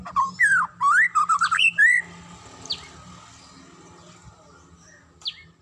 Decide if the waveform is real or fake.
real